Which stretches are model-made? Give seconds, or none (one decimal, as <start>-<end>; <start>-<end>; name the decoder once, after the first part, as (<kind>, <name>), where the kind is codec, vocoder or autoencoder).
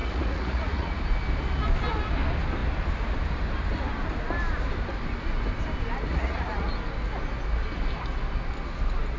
0.0-1.0 (vocoder, Vocos); 6.1-6.7